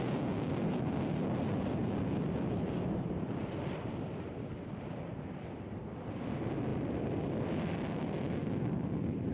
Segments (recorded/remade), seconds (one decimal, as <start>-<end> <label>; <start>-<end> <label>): 0.0-1.8 remade; 1.8-2.5 recorded; 2.5-9.3 remade